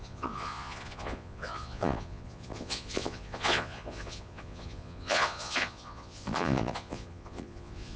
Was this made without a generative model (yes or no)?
no